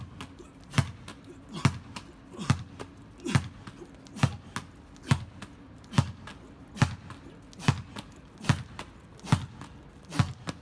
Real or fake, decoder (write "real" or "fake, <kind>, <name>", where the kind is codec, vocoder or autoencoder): real